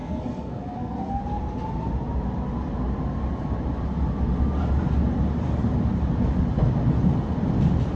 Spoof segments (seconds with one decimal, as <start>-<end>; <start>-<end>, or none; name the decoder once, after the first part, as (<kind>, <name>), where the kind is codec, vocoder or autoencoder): 0.0-1.2 (codec, SNAC)